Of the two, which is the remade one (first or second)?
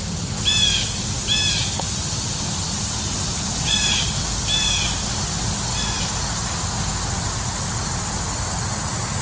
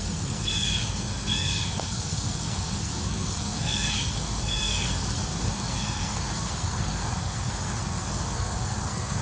second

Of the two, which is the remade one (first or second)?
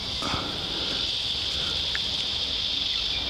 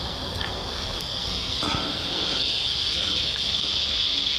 second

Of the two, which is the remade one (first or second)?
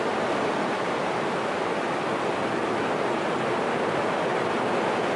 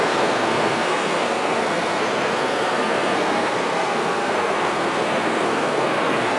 second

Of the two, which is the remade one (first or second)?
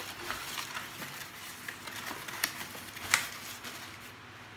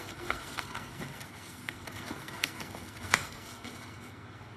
second